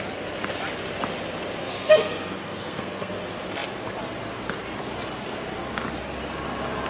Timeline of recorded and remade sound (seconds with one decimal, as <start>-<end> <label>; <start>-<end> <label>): 0.0-1.6 recorded; 1.6-3.1 remade; 3.1-6.9 recorded